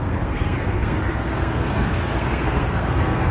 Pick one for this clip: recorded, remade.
remade